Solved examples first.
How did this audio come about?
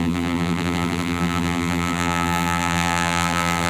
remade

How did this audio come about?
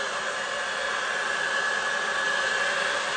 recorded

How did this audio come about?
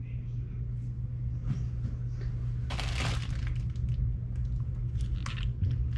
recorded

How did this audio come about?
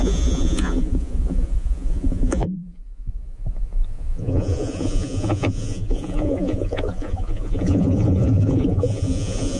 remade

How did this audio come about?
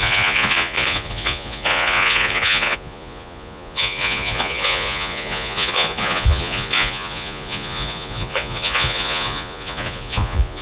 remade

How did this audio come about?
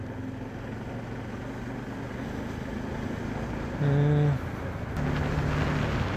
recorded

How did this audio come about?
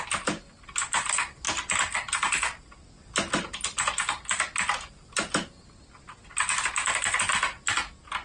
recorded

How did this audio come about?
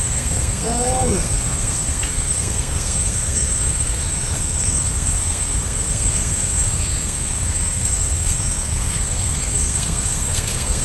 remade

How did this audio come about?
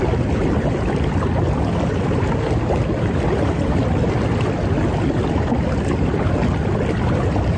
recorded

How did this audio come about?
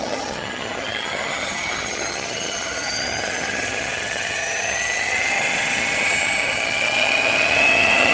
remade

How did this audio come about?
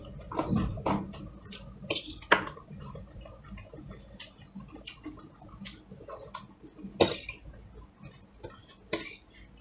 recorded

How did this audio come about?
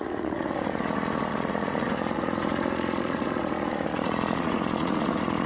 remade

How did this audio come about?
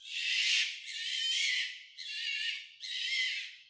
recorded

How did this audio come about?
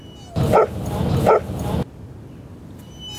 recorded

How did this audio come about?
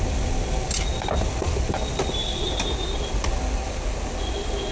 recorded